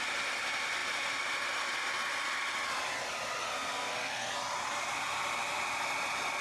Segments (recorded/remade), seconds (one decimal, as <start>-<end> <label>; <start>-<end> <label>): 0.0-3.4 recorded; 3.4-4.3 remade; 4.3-6.4 recorded